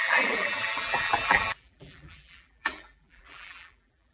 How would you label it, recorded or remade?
remade